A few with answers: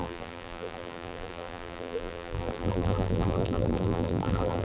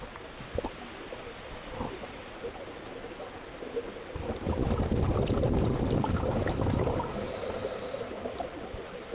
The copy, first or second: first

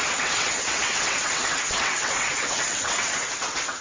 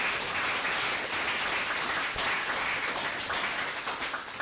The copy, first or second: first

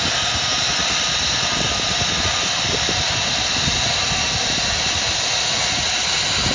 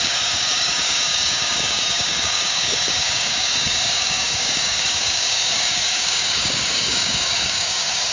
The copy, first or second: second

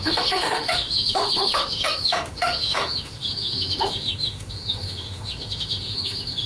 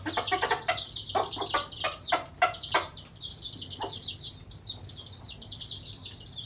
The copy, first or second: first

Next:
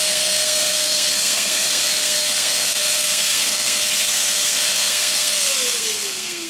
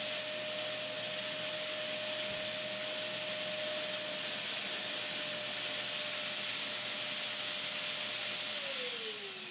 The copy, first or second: first